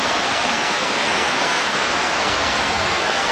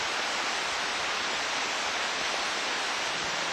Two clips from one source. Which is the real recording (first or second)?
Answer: second